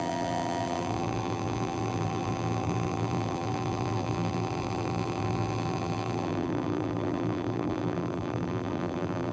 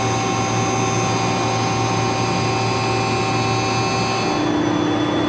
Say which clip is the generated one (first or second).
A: first